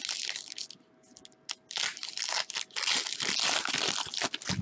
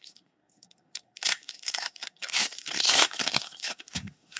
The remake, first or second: second